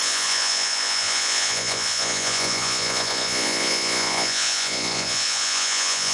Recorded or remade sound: remade